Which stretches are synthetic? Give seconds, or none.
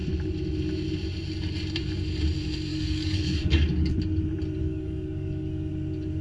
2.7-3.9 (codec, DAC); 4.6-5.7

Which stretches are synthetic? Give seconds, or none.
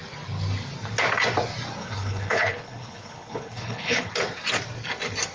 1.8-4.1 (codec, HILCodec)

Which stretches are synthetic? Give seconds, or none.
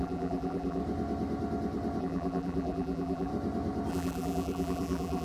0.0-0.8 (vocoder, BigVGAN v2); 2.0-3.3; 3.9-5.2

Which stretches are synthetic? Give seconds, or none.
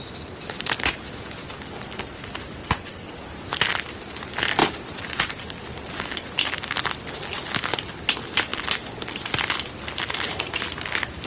2.6-3.2 (vocoder, WaveNeXt)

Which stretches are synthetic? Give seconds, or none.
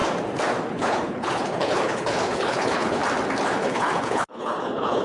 0.7-3.0 (codec, HILCodec); 3.6-5.0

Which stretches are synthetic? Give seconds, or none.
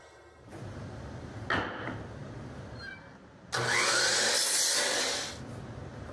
0.5-1.4 (vocoder, BigVGAN v2)